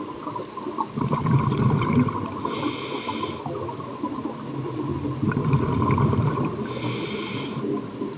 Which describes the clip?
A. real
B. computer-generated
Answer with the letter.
A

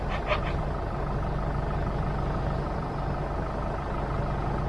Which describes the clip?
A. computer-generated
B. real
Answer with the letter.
B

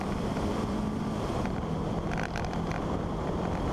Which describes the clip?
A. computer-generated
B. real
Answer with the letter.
A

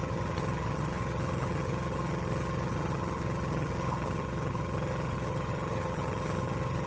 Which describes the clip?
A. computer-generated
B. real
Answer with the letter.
A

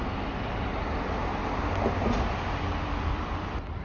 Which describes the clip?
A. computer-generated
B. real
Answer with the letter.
B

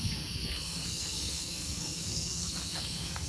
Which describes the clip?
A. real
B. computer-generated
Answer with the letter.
B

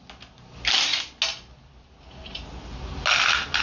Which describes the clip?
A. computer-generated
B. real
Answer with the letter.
B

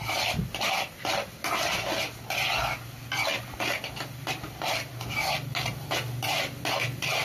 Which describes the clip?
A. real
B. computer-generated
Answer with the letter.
A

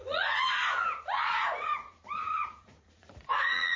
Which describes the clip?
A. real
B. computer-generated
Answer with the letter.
B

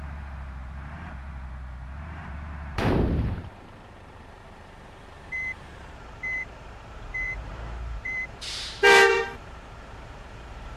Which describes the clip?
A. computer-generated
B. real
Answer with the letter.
A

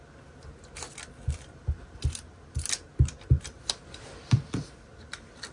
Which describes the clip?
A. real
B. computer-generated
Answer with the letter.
A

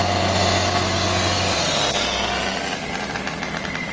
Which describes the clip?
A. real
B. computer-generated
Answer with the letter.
A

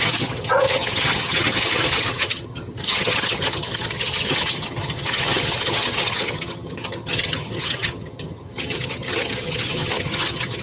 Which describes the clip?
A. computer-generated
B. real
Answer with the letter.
A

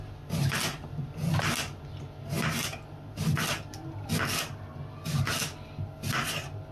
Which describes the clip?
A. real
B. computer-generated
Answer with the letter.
A